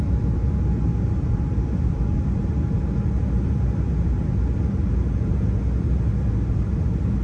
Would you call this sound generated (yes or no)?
no